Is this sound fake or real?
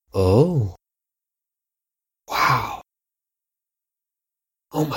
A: real